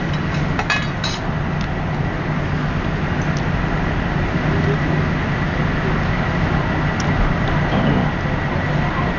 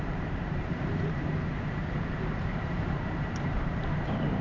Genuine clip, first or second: first